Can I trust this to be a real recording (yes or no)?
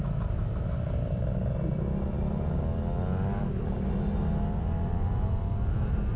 yes